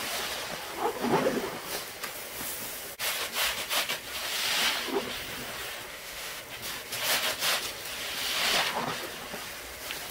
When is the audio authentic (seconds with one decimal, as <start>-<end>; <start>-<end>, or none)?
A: 0.0-5.9; 6.4-10.1